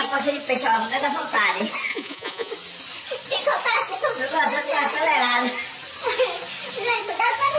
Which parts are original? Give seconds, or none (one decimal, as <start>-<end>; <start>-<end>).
0.0-1.9; 2.5-7.6